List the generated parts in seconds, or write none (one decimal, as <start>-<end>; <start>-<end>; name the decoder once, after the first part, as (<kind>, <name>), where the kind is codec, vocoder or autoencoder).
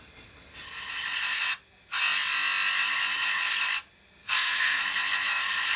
4.2-4.8 (codec, SNAC)